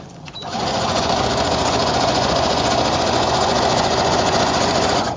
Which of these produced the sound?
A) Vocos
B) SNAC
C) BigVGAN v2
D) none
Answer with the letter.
A